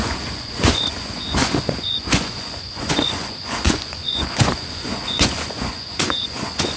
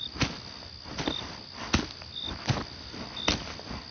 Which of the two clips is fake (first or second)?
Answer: first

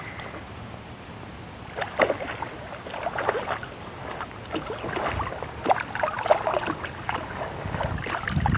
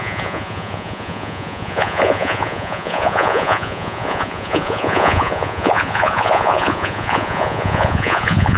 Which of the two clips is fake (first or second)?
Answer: second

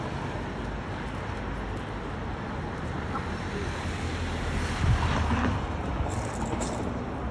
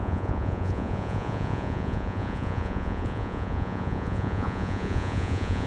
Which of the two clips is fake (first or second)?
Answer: second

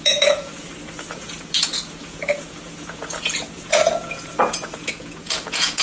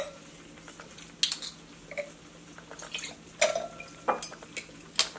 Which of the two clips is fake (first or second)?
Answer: first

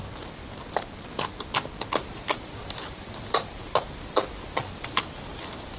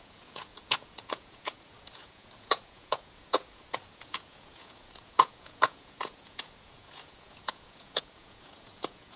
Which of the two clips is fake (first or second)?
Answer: second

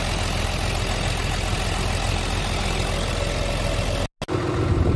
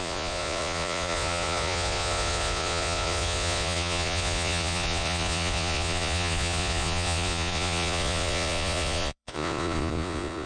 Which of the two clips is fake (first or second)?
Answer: second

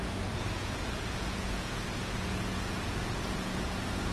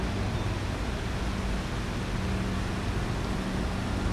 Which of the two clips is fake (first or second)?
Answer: first